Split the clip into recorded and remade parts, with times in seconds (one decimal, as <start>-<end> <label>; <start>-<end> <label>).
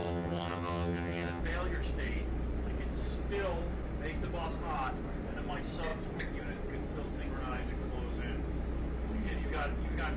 0.0-1.4 remade; 1.4-10.2 recorded